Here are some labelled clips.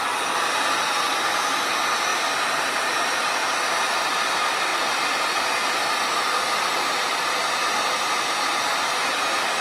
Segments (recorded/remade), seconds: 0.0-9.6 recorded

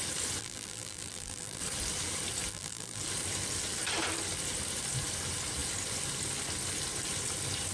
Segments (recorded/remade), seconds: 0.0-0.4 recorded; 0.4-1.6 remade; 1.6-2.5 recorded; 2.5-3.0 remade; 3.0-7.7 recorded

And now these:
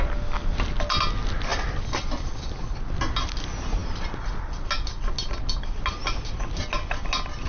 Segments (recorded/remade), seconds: 0.0-7.5 recorded

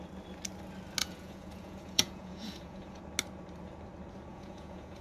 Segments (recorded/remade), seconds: 0.0-1.0 recorded; 1.0-3.0 remade; 3.0-4.3 recorded; 4.3-5.0 remade